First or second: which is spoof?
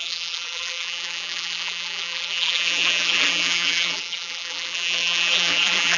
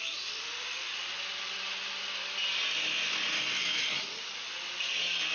first